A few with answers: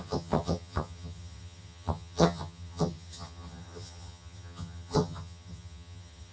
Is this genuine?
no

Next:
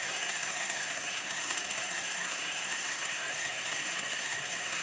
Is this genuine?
no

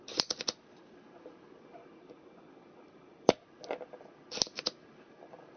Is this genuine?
yes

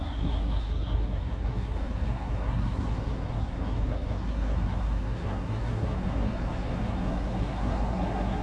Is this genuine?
no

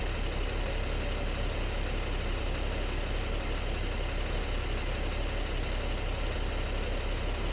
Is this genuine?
yes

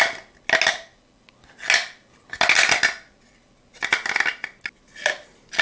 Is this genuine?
yes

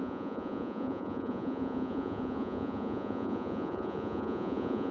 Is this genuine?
no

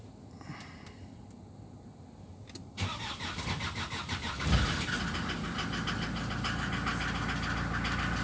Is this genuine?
yes